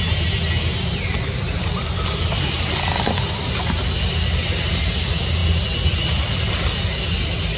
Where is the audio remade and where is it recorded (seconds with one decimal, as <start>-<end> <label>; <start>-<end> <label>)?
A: 0.0-7.6 recorded